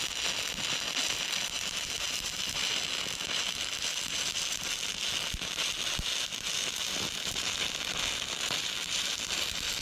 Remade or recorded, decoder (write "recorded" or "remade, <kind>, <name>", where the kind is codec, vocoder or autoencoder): recorded